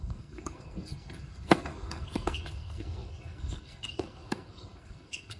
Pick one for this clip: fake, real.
fake